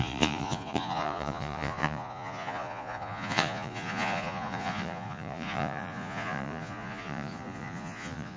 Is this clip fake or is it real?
fake